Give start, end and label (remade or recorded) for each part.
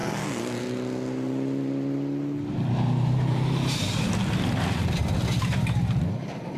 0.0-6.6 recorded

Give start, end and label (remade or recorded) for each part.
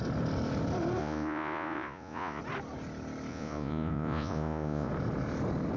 0.0-1.0 recorded; 1.0-2.4 remade; 2.4-3.3 recorded; 3.3-4.9 remade; 4.9-5.8 recorded